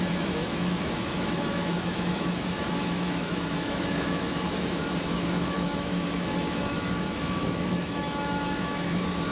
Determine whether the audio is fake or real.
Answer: fake